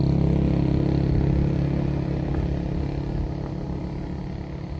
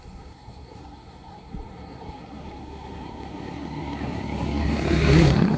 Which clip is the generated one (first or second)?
second